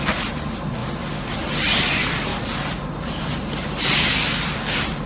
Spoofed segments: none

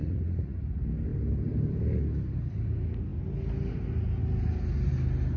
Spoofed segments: 0.0-0.6 (vocoder, Vocos)

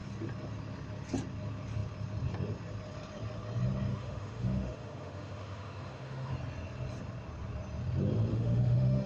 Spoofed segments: 3.9-6.3 (autoencoder, DAC-VAE); 8.3-9.1

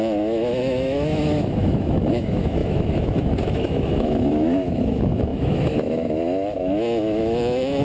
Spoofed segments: 0.0-7.8 (autoencoder, DAC-VAE)

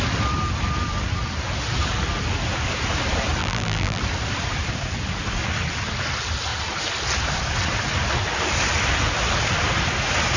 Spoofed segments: 3.4-4.0 (vocoder, BigVGAN v2)